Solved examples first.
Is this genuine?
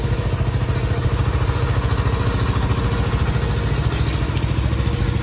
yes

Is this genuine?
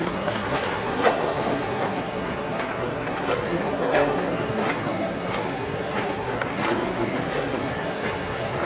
no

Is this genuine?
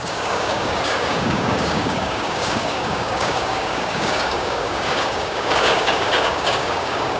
no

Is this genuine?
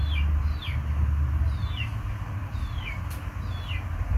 yes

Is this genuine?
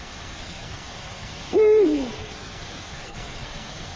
no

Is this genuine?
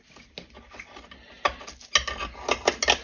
yes